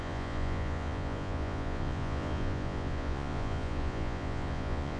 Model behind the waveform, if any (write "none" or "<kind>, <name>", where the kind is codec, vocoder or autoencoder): vocoder, Vocos